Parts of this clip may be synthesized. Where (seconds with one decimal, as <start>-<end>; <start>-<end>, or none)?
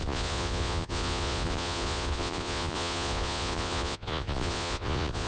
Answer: 0.0-5.3